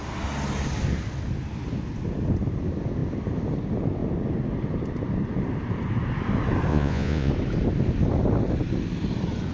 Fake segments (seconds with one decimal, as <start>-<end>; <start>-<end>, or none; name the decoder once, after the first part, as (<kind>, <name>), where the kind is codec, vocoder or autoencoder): 6.7-7.3 (vocoder, Vocos)